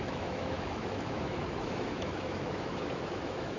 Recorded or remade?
remade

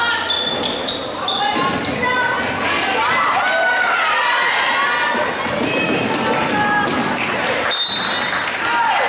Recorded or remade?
recorded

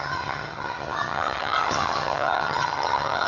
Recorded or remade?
remade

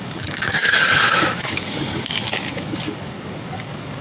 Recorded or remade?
remade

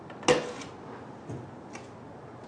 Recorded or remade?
recorded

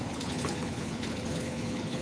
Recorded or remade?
remade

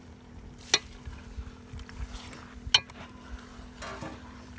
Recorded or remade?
recorded